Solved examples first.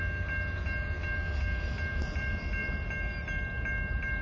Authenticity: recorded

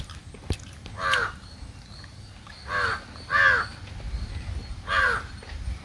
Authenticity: recorded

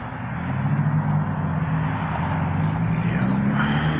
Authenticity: recorded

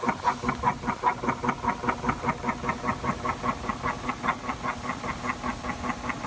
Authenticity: recorded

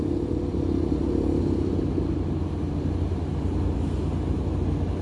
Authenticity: recorded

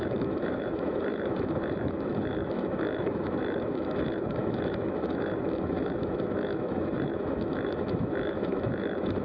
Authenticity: remade